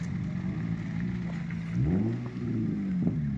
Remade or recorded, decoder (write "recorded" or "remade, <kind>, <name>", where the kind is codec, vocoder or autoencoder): recorded